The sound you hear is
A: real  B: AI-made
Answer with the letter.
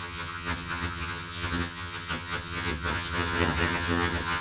B